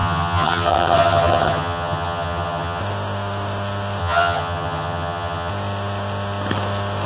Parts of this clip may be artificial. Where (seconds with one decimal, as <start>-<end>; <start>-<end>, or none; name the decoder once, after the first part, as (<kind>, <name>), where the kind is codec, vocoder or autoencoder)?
0.0-2.8 (vocoder, HiFi-GAN); 4.0-5.5